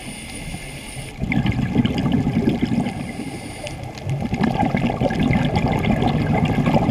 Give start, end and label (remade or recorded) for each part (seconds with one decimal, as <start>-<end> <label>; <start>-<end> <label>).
0.0-6.9 recorded